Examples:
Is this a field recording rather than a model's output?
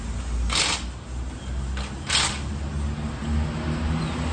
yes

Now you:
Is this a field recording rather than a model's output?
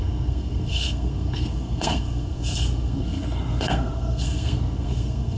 no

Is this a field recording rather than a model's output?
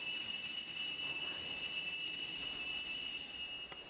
yes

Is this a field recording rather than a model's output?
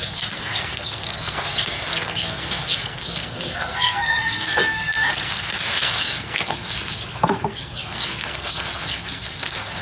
no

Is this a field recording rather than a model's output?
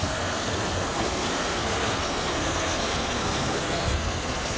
no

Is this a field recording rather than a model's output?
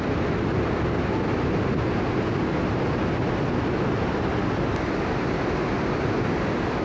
yes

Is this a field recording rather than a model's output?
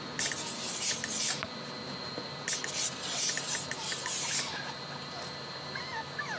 yes